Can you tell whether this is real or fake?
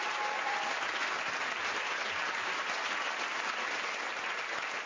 real